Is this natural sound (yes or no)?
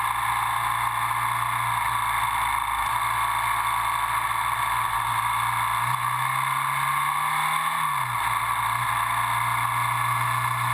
yes